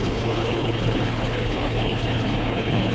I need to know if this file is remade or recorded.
remade